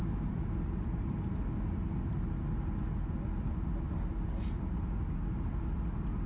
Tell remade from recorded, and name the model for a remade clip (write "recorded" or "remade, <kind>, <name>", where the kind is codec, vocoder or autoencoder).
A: recorded